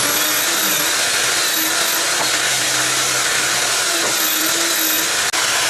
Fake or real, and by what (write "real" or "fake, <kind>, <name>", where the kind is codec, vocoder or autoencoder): real